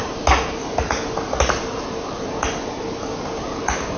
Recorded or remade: recorded